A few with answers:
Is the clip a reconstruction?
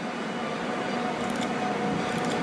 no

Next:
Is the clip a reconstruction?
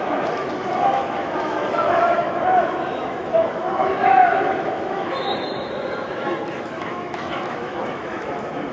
yes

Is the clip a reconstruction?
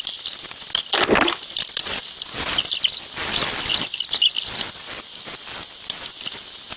no